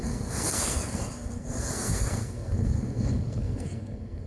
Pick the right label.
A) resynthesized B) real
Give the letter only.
A